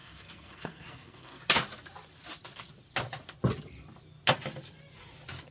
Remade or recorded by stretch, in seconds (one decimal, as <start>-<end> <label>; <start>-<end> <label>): 0.0-1.4 remade; 1.4-5.5 recorded